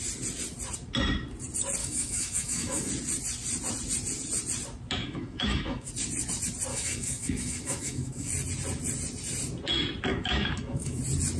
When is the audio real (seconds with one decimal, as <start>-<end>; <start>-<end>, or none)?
0.0-1.8; 2.9-5.0; 5.9-6.7; 8.3-10.1; 11.0-11.4